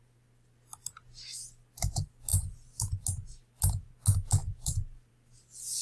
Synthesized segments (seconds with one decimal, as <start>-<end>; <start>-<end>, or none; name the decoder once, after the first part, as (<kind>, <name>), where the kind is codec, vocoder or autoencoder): none